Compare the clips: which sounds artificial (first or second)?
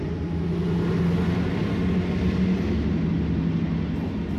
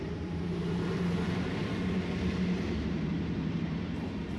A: second